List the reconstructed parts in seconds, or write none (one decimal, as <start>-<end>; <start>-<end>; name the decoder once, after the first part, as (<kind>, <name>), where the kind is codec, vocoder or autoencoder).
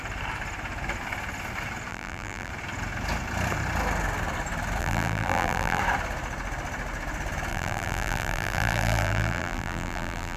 1.9-2.5 (vocoder, BigVGAN v2); 4.8-5.8; 7.5-10.4